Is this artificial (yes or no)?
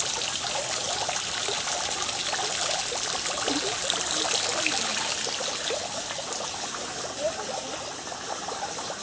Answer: no